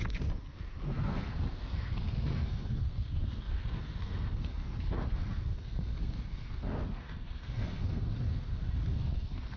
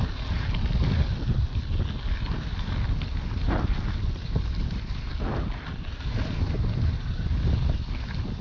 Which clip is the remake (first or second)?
first